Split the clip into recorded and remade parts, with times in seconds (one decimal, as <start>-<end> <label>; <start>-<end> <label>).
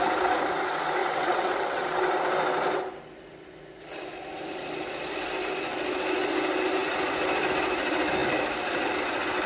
0.0-1.0 recorded; 1.0-2.0 remade; 2.0-9.5 recorded